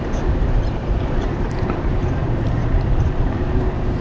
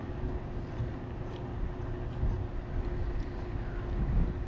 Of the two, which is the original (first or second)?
second